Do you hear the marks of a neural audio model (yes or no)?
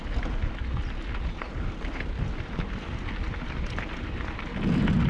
no